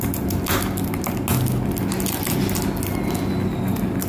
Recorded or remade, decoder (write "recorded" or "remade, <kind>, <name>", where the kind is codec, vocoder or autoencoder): recorded